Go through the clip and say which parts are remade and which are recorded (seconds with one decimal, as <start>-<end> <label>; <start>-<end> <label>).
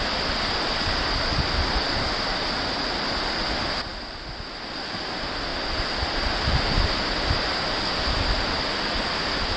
0.0-9.6 recorded